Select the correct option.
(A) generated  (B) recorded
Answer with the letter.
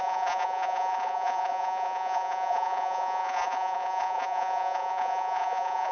A